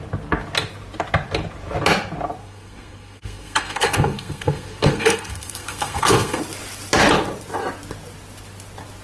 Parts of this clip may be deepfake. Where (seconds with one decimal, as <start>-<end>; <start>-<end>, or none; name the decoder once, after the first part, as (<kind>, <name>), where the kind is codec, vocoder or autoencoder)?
2.4-6.4 (codec, SNAC)

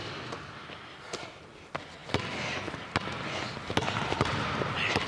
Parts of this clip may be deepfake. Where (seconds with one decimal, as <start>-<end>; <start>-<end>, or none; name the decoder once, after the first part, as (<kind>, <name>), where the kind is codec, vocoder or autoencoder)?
none

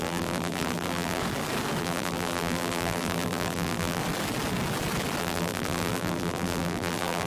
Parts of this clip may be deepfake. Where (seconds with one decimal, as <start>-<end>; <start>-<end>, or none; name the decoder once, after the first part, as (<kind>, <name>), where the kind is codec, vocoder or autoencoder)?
0.0-1.2 (vocoder, BigVGAN v2); 1.8-4.0; 5.2-7.3

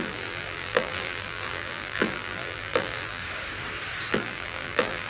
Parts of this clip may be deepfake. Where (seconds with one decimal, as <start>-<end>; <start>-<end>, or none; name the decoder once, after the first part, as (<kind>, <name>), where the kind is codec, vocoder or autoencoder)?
0.0-3.2 (vocoder, BigVGAN v2); 4.1-5.1

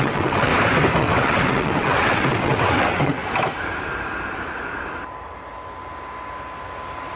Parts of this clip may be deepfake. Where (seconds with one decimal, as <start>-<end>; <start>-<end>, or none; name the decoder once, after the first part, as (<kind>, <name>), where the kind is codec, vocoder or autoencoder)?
0.0-0.5 (vocoder, WaveNeXt); 1.0-3.2

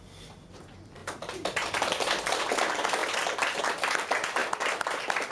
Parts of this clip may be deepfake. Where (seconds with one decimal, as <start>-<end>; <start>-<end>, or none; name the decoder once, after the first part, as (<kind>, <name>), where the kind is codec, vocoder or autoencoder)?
1.0-2.4 (vocoder, BigVGAN v2); 3.0-3.6; 4.4-5.3